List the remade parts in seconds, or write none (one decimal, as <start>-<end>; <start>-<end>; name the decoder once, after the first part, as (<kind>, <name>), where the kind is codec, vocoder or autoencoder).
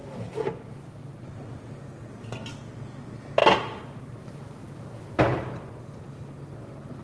none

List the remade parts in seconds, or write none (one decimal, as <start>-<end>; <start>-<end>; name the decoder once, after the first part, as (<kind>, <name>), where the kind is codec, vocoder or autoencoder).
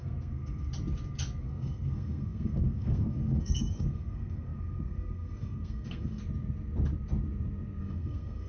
0.0-0.7 (codec, SNAC); 1.4-6.2; 7.8-8.5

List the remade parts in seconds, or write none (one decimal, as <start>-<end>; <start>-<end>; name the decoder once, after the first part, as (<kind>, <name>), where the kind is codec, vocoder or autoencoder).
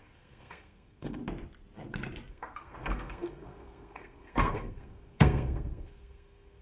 0.0-1.2 (codec, SNAC); 2.3-6.6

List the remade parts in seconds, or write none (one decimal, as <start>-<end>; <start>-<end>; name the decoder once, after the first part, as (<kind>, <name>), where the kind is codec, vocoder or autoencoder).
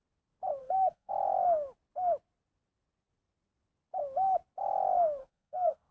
0.6-1.1 (codec, SNAC); 5.2-5.9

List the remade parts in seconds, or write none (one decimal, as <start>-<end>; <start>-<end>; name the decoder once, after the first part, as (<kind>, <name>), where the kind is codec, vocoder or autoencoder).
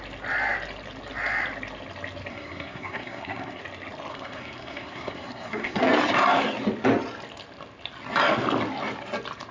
2.3-3.6 (codec, SNAC); 4.1-5.8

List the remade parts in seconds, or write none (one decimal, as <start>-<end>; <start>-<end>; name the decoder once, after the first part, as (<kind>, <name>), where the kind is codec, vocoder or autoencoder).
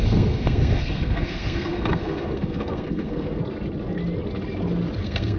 0.0-3.4 (codec, SNAC); 5.0-5.4